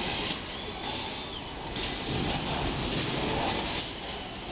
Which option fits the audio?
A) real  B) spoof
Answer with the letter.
A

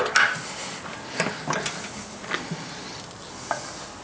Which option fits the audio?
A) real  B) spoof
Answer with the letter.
A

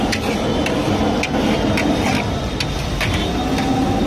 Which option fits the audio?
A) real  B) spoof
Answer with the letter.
A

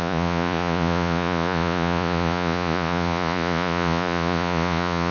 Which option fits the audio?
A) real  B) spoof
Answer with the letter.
B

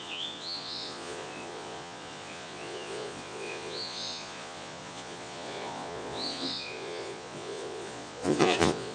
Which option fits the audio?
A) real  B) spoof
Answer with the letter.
B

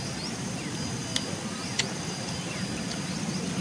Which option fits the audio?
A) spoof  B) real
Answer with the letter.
B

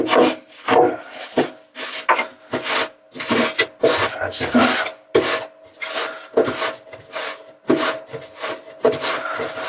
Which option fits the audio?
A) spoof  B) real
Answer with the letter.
B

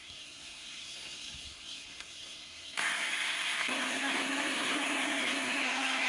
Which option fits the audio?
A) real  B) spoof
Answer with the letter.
B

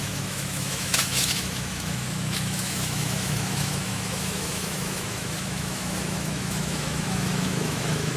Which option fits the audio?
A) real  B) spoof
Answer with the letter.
B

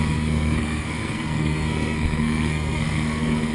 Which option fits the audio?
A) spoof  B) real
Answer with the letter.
A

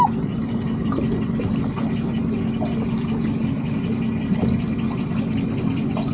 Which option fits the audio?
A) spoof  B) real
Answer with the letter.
B